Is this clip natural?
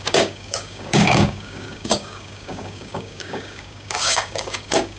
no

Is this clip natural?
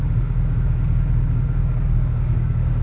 no